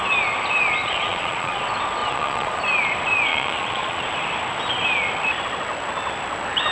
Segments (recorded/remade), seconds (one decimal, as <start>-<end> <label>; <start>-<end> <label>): 0.0-0.8 recorded; 0.8-1.6 remade; 1.6-2.0 recorded; 2.0-2.6 remade; 2.6-3.3 recorded; 3.3-4.0 remade; 4.0-6.7 recorded